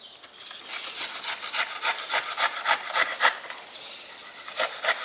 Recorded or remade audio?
recorded